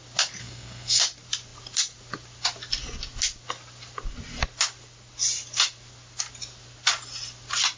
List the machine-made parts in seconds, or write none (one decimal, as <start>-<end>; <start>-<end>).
0.4-1.0